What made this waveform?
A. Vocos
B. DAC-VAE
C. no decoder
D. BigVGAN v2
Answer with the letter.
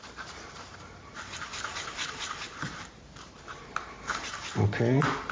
D